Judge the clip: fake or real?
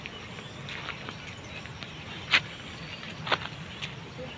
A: real